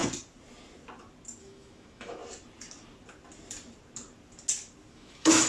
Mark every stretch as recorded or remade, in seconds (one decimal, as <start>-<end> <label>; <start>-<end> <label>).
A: 0.0-1.4 recorded; 1.4-2.2 remade; 2.2-4.9 recorded; 4.9-5.5 remade